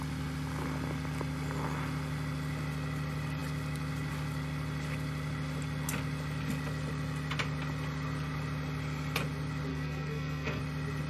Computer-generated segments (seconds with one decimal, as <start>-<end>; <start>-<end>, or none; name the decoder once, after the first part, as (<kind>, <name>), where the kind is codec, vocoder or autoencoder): 9.7-10.6 (codec, SNAC)